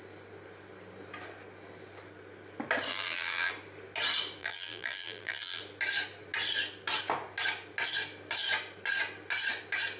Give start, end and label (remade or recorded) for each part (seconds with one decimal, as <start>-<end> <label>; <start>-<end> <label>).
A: 0.0-2.9 recorded; 2.9-3.5 remade; 3.5-4.4 recorded; 4.4-5.6 remade; 5.6-10.0 recorded